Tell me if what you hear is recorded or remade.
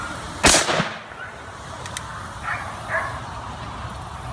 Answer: recorded